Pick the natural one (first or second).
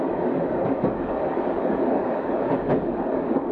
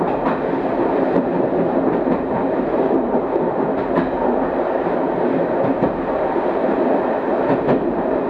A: second